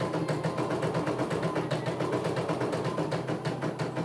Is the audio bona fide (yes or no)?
yes